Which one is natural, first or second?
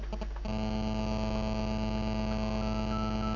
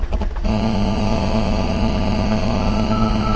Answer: first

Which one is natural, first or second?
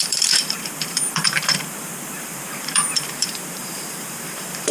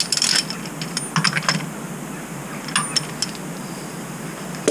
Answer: second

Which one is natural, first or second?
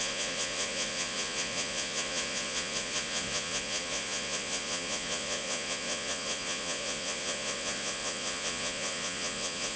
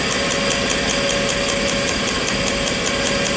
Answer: second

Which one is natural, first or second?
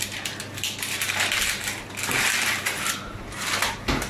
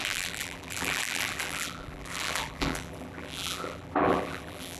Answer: first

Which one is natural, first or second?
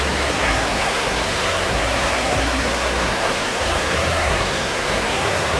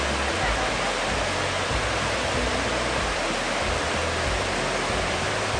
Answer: second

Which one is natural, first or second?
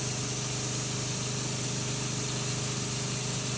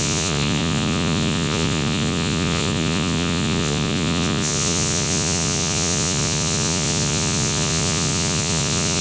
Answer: first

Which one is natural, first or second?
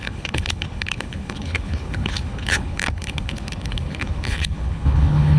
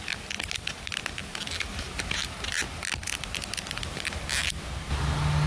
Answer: second